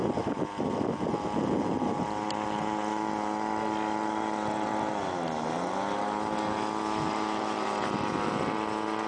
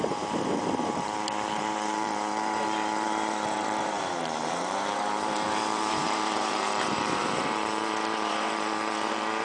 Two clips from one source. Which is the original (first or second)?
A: first